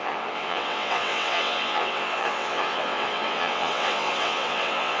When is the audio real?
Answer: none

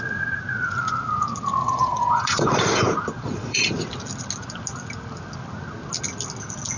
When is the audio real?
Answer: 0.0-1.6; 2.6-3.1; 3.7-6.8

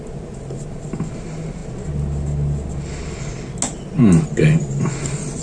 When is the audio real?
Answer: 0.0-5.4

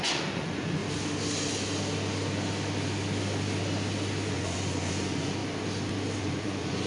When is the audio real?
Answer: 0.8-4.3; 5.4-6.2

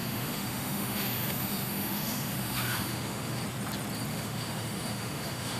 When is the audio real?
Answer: 3.4-4.1

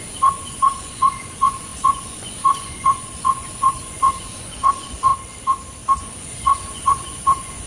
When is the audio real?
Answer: 5.1-6.0

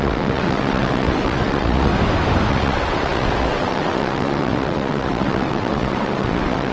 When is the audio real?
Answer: 1.9-2.5